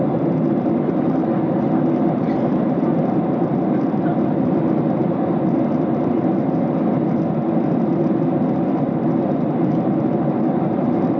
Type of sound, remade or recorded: remade